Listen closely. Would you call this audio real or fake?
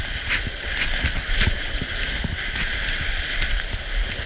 real